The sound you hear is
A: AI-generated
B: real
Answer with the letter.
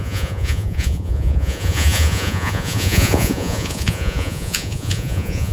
A